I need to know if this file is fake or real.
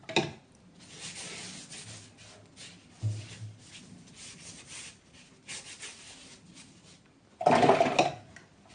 real